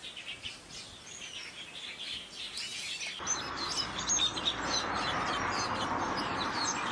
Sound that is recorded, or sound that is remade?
recorded